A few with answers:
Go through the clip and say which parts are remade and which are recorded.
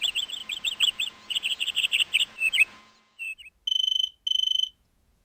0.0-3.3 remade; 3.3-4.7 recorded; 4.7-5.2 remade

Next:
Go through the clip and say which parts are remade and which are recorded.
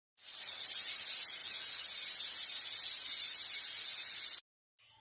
0.0-5.0 recorded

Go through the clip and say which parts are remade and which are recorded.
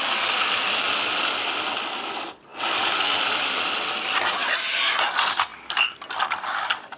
0.0-7.0 recorded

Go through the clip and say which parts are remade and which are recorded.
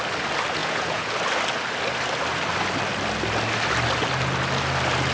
0.0-0.6 recorded; 0.6-1.1 remade; 1.1-5.1 recorded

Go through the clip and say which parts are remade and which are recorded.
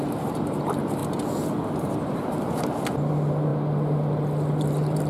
0.0-1.0 remade; 1.0-1.6 recorded; 1.6-3.5 remade; 3.5-4.5 recorded; 4.5-5.1 remade